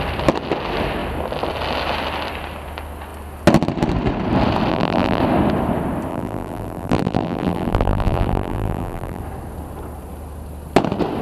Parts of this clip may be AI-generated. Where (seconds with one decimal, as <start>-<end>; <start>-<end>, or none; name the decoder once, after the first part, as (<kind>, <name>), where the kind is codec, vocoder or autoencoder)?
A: 4.7-5.2 (vocoder, BigVGAN v2); 6.1-9.2